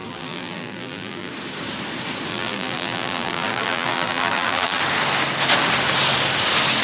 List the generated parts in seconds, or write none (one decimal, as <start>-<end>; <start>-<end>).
0.0-1.3; 2.3-4.8